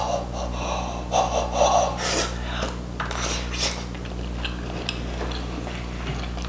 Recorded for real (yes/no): yes